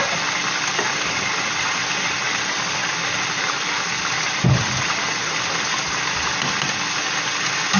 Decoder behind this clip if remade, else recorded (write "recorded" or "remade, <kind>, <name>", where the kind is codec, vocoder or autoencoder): recorded